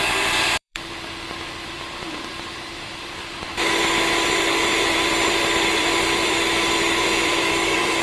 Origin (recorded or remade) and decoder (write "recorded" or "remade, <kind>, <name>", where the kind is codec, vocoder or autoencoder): remade, vocoder, BigVGAN v2